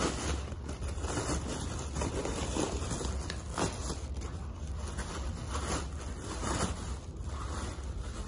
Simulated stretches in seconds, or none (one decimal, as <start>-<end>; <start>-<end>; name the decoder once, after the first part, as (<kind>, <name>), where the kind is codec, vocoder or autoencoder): 2.2-3.1 (vocoder, BigVGAN v2)